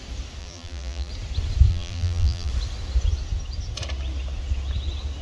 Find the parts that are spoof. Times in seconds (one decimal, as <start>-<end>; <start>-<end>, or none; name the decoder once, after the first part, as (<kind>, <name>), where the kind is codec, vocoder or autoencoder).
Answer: 0.4-1.1 (vocoder, BigVGAN v2); 1.7-2.5

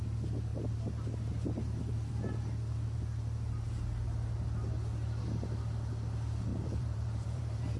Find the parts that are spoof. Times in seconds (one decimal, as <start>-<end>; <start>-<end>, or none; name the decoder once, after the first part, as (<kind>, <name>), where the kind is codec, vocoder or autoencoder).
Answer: 6.5-7.8 (vocoder, BigVGAN v2)

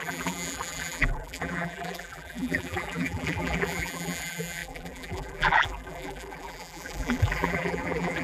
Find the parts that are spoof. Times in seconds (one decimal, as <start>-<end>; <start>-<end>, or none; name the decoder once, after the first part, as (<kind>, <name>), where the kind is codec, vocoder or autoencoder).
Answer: 0.0-8.2 (vocoder, BigVGAN v2)

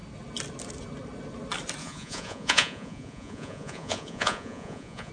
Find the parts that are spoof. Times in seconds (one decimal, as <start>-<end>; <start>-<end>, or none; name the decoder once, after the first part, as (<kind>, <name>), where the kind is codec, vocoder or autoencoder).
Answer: 1.8-5.1 (vocoder, Vocos)

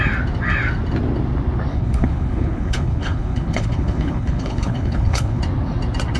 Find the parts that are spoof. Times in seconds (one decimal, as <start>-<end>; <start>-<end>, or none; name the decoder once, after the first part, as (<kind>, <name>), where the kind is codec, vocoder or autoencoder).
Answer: 1.7-5.4 (codec, HILCodec)